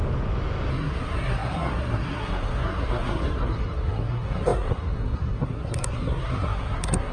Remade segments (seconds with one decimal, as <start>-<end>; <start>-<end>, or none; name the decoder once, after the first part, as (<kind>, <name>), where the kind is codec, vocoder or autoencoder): 0.7-7.1 (codec, SNAC)